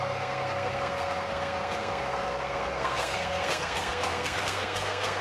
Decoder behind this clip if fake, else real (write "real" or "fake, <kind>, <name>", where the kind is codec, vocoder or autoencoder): fake, codec, SNAC